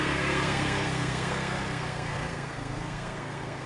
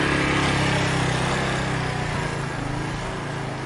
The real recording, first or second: second